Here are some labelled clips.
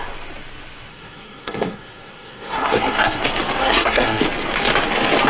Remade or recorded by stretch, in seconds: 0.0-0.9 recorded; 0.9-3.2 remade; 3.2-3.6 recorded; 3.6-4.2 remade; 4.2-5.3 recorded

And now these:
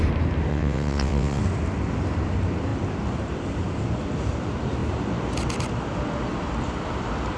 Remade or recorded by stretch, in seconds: 0.0-0.5 recorded; 0.5-1.4 remade; 1.4-7.4 recorded

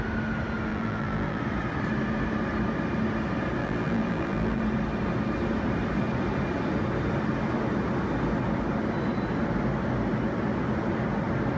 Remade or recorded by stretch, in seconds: 0.0-0.7 recorded; 0.7-1.4 remade; 1.4-3.6 recorded; 3.6-4.6 remade; 4.6-11.6 recorded